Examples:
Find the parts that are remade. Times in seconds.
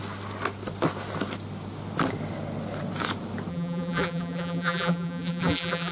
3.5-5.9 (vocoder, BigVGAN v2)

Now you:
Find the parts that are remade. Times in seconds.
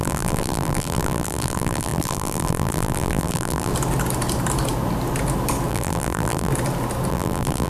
0.0-3.7 (vocoder, BigVGAN v2); 5.7-6.5; 7.1-7.7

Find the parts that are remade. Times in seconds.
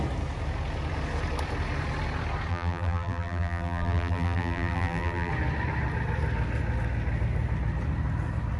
2.5-5.3 (vocoder, BigVGAN v2)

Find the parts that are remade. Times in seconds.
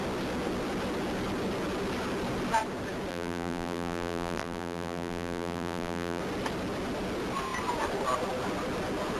3.1-6.2 (vocoder, BigVGAN v2)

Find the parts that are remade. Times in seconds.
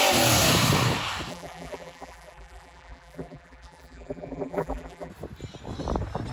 1.3-5.1 (vocoder, BigVGAN v2)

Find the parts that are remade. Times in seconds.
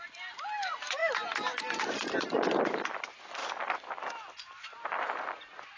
0.0-1.0 (vocoder, BigVGAN v2); 2.1-5.8